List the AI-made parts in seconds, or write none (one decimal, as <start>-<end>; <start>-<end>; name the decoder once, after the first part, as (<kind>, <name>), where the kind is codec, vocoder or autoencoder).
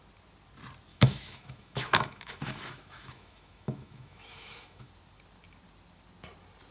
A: 0.9-4.9 (autoencoder, DAC-VAE)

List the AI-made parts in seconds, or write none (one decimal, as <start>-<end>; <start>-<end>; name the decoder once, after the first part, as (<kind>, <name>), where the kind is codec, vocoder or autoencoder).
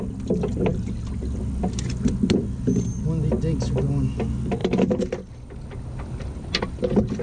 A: none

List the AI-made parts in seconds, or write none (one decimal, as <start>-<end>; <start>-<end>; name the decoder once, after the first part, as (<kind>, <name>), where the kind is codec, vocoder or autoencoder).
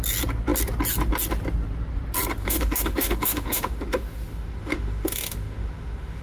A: 2.4-6.2 (autoencoder, DAC-VAE)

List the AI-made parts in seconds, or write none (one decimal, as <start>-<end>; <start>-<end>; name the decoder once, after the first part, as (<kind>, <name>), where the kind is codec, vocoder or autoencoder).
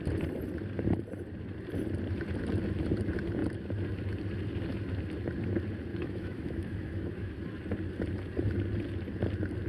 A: 5.9-7.3 (autoencoder, DAC-VAE)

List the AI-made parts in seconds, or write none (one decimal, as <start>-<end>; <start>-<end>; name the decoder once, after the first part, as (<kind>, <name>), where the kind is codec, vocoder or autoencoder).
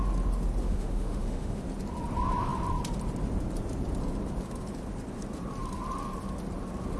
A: 0.6-1.6 (autoencoder, DAC-VAE)